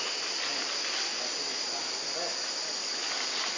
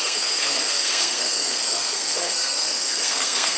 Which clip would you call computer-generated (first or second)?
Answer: second